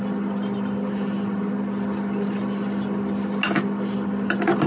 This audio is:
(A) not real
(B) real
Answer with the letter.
B